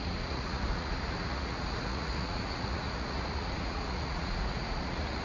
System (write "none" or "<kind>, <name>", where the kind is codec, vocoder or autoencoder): vocoder, Vocos